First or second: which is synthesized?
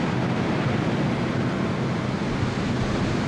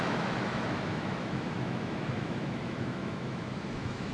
second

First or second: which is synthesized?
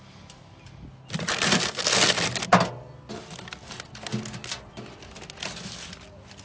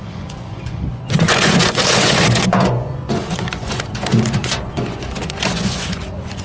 second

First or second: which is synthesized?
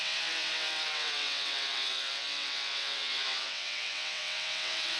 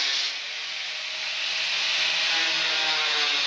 first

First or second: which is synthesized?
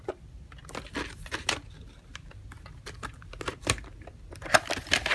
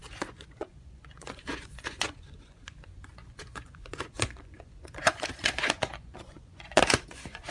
second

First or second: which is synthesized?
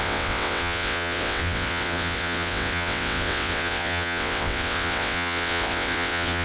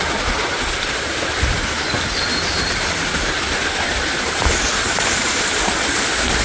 first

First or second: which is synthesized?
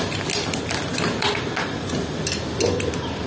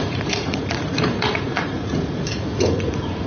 second